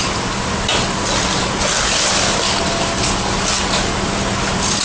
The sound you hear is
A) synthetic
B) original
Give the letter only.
B